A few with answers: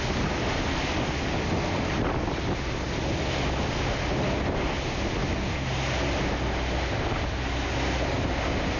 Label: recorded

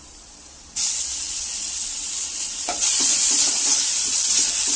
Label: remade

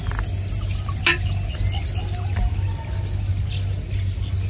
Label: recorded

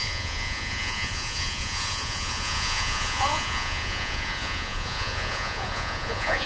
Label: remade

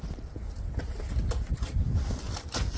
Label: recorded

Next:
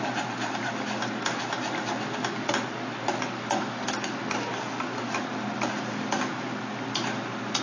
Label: recorded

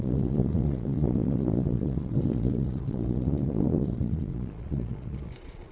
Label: remade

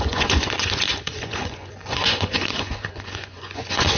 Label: remade